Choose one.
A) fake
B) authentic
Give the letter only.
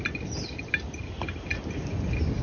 B